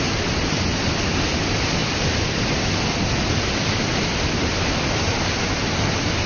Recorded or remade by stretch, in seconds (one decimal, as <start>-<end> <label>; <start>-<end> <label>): 0.0-6.3 recorded